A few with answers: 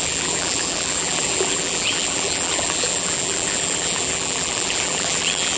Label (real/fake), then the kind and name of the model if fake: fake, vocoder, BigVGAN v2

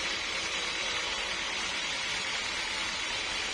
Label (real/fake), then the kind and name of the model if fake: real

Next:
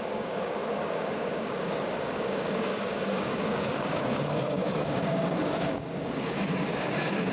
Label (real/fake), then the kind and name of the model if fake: fake, codec, DAC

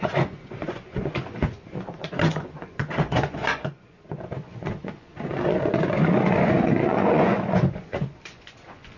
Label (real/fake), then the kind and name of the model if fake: fake, vocoder, Vocos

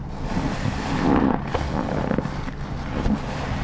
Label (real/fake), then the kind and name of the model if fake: real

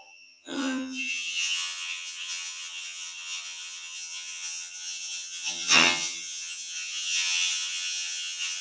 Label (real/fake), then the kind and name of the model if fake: fake, vocoder, HiFi-GAN